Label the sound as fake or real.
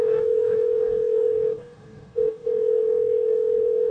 fake